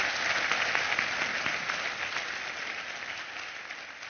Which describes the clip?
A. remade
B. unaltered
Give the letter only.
B